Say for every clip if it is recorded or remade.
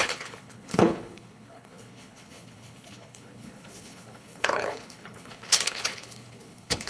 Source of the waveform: remade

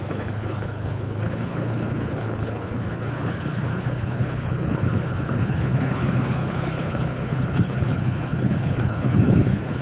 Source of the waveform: remade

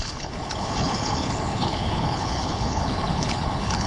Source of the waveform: remade